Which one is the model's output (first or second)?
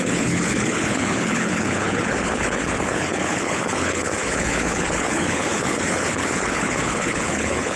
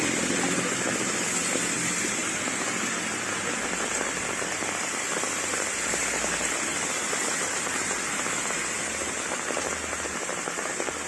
first